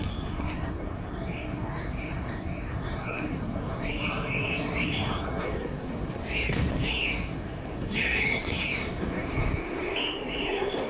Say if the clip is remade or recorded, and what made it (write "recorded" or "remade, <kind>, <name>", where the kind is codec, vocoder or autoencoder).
remade, codec, SNAC